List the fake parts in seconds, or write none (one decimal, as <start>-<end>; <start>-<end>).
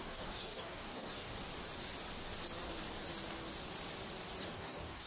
0.0-1.3; 4.4-5.1